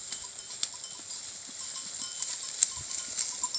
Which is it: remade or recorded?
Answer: recorded